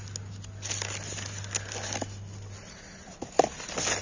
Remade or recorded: recorded